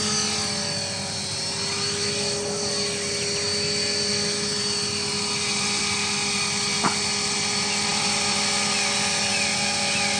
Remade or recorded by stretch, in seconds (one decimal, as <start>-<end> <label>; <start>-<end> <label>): 0.0-4.5 recorded; 4.5-5.8 remade; 5.8-7.9 recorded; 7.9-8.4 remade; 8.4-10.2 recorded